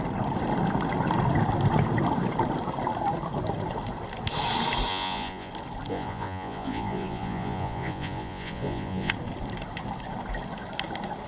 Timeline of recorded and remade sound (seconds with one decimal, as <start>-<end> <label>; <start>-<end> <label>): 0.0-4.9 recorded; 4.9-5.5 remade; 5.5-5.9 recorded; 5.9-9.1 remade; 9.1-11.3 recorded